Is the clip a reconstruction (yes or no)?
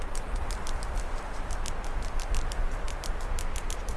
no